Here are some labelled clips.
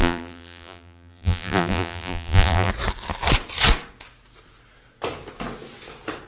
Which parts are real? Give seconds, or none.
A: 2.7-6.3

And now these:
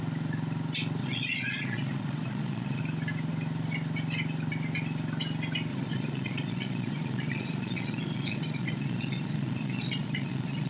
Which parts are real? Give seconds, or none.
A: 0.0-1.0; 2.8-5.7

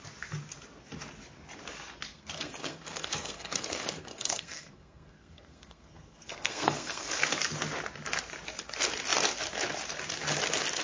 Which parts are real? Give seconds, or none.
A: 0.0-2.1; 7.1-10.8

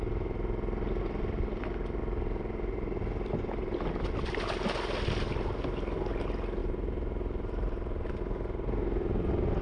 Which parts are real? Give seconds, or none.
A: 0.0-2.0; 3.0-6.6; 8.2-9.6

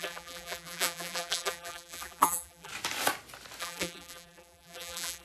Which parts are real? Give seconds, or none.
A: 2.7-3.6

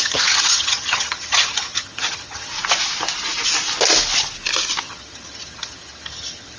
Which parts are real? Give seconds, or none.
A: 2.5-4.8

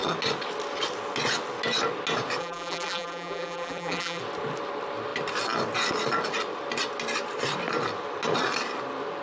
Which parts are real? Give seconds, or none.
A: 0.0-2.4; 4.2-9.2